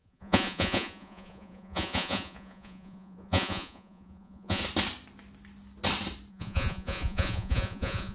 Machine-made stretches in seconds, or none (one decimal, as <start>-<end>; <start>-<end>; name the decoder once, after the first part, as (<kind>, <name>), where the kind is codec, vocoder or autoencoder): 0.0-4.6 (vocoder, Vocos); 6.3-8.1